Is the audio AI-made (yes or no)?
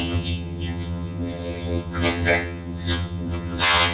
yes